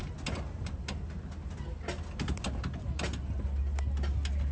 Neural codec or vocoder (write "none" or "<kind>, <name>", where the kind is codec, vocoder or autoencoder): none